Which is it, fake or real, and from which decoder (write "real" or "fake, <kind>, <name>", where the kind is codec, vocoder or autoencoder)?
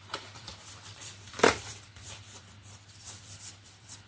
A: fake, vocoder, BigVGAN v2